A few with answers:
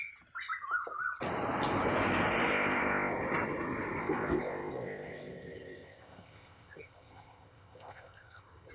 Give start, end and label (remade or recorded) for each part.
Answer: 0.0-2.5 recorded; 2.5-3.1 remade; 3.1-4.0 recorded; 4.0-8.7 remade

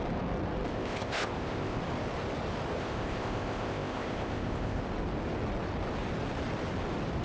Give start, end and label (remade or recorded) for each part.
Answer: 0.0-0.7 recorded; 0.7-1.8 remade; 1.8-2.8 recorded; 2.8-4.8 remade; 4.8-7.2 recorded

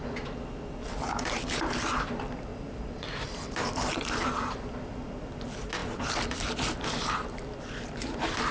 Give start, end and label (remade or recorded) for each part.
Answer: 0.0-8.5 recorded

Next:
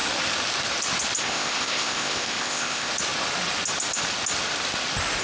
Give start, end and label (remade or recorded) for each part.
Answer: 0.0-1.2 recorded; 1.2-2.9 remade; 2.9-5.2 recorded

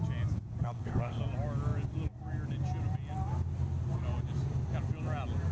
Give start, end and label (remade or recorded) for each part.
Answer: 0.0-0.6 recorded; 0.6-1.2 remade; 1.2-5.5 recorded

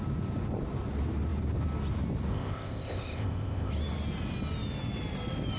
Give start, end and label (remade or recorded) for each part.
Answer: 0.0-2.3 recorded; 2.3-3.7 remade; 3.7-5.6 recorded

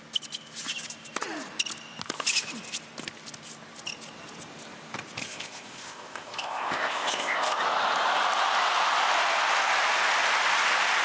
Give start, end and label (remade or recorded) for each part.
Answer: 0.0-5.3 recorded; 5.3-7.6 remade; 7.6-11.0 recorded

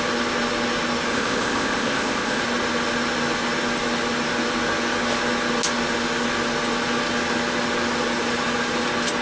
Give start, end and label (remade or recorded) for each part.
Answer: 0.0-1.1 recorded; 1.1-2.4 remade; 2.4-9.2 recorded